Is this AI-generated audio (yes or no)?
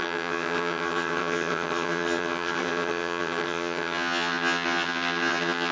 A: yes